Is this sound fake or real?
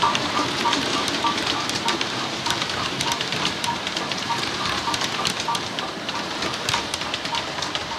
fake